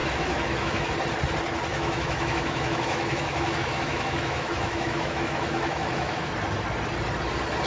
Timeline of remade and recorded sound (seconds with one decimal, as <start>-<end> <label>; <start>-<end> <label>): 0.0-0.9 remade; 0.9-1.7 recorded; 1.7-6.3 remade; 6.3-7.7 recorded

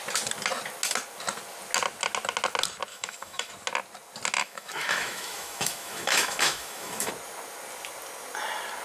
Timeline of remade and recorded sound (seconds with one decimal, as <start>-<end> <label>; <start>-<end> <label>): 0.0-2.9 recorded; 2.9-3.5 remade; 3.5-4.4 recorded; 4.4-7.1 remade; 7.1-8.8 recorded

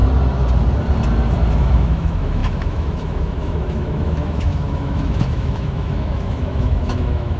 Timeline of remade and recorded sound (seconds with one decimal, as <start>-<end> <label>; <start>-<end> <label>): 0.0-1.5 recorded; 1.5-7.4 remade

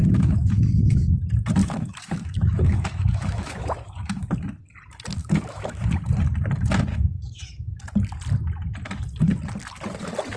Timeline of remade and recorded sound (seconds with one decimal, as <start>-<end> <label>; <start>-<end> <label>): 0.0-1.1 remade; 1.1-1.6 recorded; 1.6-4.3 remade; 4.3-5.2 recorded; 5.2-5.9 remade; 5.9-6.9 recorded; 6.9-7.8 remade; 7.8-10.4 recorded

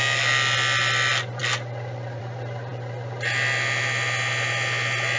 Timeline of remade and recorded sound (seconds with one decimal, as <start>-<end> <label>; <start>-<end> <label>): 0.0-5.2 recorded

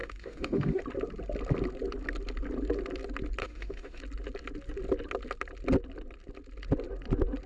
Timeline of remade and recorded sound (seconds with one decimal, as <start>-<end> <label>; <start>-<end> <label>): 0.0-0.8 remade; 0.8-3.4 recorded; 3.4-4.0 remade; 4.0-7.5 recorded